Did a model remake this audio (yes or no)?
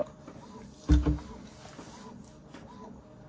no